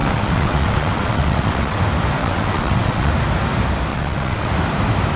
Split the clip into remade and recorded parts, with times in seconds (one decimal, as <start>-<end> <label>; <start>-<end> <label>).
0.0-1.8 remade; 1.8-2.2 recorded; 2.2-3.1 remade; 3.1-3.9 recorded; 3.9-4.5 remade; 4.5-5.2 recorded